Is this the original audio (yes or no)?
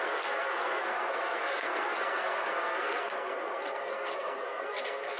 no